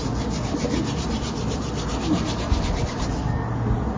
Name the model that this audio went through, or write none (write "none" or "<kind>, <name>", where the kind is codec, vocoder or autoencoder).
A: none